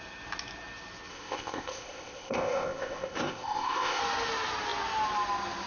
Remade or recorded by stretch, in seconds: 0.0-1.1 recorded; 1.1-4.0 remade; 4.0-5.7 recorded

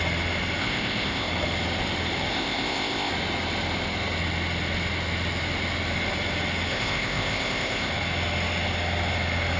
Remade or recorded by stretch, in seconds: 0.0-0.6 recorded; 0.6-1.3 remade; 1.3-2.3 recorded; 2.3-3.1 remade; 3.1-6.7 recorded; 6.7-7.9 remade; 7.9-9.6 recorded

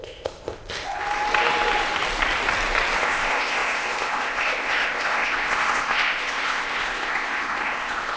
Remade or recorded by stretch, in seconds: 0.0-1.0 remade; 1.0-3.0 recorded; 3.0-8.2 remade